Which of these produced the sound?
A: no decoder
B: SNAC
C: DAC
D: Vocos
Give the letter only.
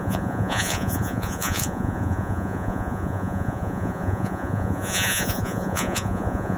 D